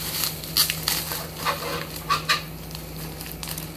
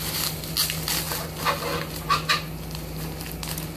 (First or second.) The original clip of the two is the second